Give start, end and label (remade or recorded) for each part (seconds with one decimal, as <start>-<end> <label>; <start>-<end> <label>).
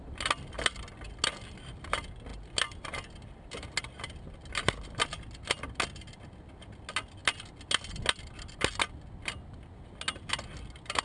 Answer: 0.0-11.0 recorded